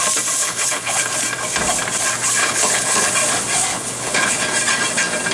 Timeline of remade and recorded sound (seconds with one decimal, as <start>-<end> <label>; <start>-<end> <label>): 0.0-0.4 recorded; 0.4-1.1 remade; 1.1-2.4 recorded; 2.4-3.1 remade; 3.1-3.7 recorded; 3.7-4.4 remade; 4.4-5.3 recorded